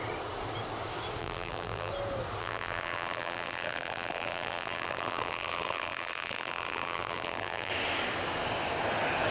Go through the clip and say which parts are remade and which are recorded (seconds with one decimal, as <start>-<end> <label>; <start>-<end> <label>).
0.0-1.2 recorded; 1.2-1.9 remade; 1.9-2.4 recorded; 2.4-7.7 remade; 7.7-9.3 recorded